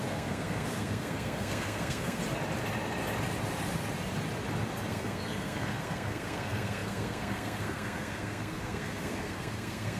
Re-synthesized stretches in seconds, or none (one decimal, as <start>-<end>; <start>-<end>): 0.0-2.2; 4.9-10.0